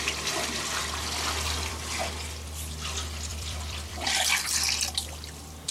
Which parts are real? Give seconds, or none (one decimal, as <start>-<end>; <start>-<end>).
0.0-3.3; 4.2-5.7

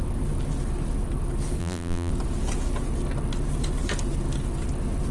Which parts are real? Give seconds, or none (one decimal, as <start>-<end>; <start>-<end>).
0.0-1.6; 2.1-5.1